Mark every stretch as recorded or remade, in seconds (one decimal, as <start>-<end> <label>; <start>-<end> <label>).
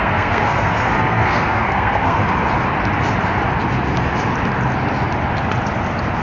0.0-2.2 remade; 2.2-6.2 recorded